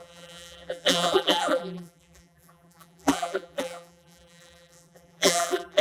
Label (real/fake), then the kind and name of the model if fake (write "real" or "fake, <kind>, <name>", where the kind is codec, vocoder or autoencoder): fake, vocoder, BigVGAN v2